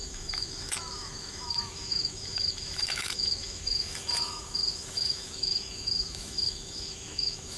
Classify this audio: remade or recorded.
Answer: remade